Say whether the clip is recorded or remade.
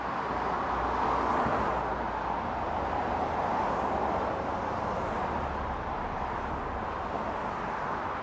recorded